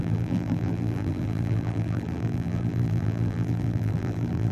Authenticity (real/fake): fake